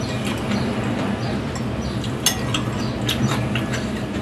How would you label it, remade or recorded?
recorded